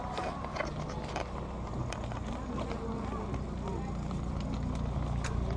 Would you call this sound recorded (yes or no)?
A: yes